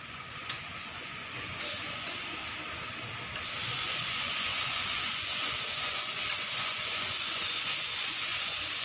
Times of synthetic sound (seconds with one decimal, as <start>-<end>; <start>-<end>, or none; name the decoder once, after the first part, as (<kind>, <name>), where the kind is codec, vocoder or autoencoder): 0.0-2.4 (vocoder, Vocos); 3.6-8.8